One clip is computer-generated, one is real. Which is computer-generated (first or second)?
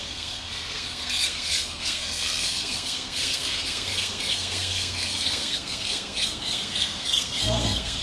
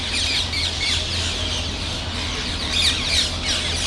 first